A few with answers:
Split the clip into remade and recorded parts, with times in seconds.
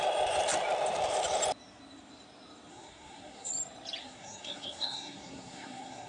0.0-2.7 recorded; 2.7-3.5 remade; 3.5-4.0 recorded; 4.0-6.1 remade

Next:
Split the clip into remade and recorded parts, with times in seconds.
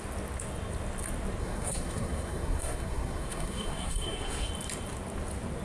0.0-1.4 recorded; 1.4-4.5 remade; 4.5-5.6 recorded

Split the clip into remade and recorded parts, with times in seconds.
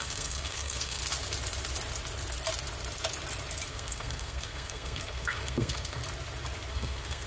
0.0-1.0 remade; 1.0-3.7 recorded; 3.7-6.0 remade; 6.0-6.7 recorded; 6.7-7.3 remade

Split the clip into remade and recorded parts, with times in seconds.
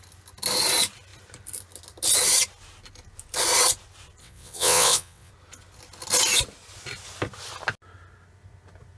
0.0-4.2 recorded; 4.2-5.3 remade; 5.3-9.0 recorded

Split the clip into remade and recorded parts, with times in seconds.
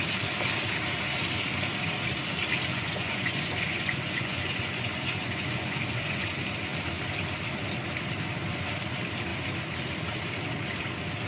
0.0-2.7 recorded; 2.7-6.2 remade; 6.2-11.3 recorded